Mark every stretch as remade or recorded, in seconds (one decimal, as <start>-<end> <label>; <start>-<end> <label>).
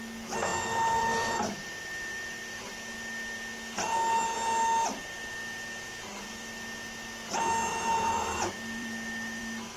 0.0-0.5 recorded; 0.5-2.9 remade; 2.9-7.7 recorded; 7.7-8.4 remade; 8.4-8.8 recorded; 8.8-9.4 remade; 9.4-9.8 recorded